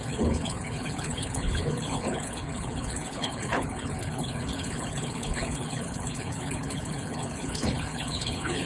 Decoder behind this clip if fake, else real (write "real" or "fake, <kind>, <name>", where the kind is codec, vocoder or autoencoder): fake, codec, HILCodec